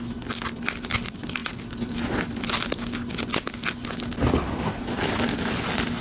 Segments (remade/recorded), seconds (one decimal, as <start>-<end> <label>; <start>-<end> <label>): 0.0-6.0 recorded